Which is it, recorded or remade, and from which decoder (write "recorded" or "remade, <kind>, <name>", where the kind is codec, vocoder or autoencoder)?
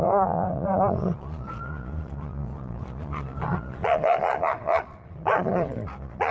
remade, vocoder, Vocos